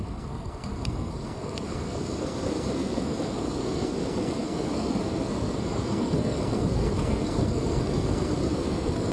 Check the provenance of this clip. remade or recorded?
remade